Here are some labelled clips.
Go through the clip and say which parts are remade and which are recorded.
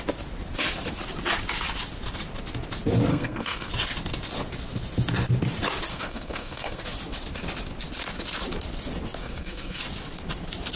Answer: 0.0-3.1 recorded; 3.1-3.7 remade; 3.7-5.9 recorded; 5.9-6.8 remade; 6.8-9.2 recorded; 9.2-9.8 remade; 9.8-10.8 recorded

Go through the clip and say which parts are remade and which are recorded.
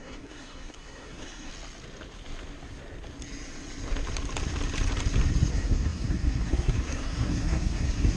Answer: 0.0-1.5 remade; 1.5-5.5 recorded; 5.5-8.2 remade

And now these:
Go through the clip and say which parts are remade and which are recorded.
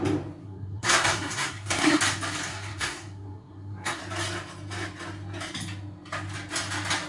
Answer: 0.0-0.4 recorded; 0.4-2.0 remade; 2.0-2.5 recorded; 2.5-4.0 remade; 4.0-7.1 recorded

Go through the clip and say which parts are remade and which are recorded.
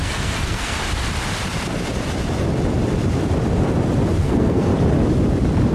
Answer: 0.0-0.8 remade; 0.8-4.2 recorded; 4.2-4.7 remade; 4.7-5.7 recorded